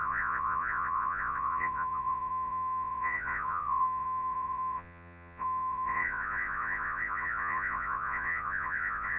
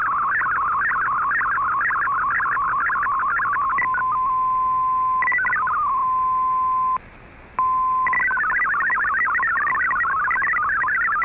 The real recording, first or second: second